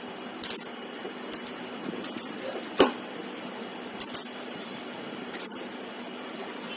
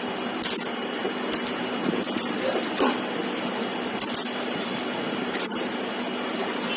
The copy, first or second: first